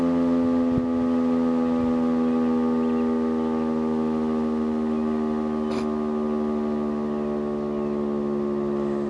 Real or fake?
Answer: real